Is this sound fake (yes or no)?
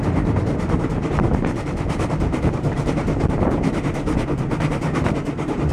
yes